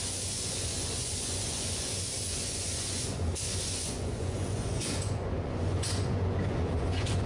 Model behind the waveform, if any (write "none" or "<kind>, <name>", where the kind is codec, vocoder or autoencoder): vocoder, Vocos